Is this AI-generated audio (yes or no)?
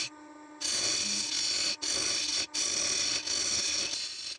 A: no